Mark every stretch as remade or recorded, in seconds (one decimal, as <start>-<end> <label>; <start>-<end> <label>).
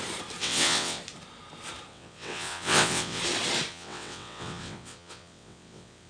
0.0-0.4 recorded; 0.4-1.0 remade; 1.0-1.9 recorded; 1.9-3.2 remade; 3.2-3.7 recorded; 3.7-6.1 remade